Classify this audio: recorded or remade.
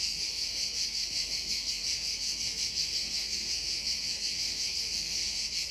remade